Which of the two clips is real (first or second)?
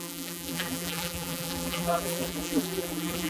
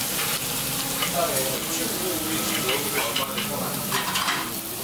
second